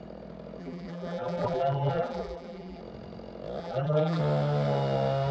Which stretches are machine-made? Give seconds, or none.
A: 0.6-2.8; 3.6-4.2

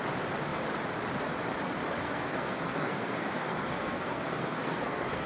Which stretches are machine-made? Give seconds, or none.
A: 2.0-5.3

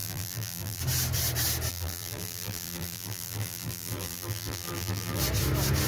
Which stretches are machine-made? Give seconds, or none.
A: 0.0-0.8; 1.7-5.2

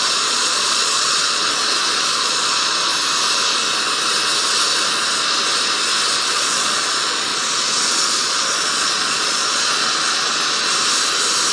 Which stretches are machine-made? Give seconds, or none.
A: 0.0-2.9; 6.3-7.3; 7.9-9.8